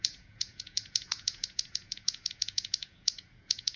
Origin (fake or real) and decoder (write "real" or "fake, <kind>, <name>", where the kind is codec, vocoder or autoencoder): fake, vocoder, Vocos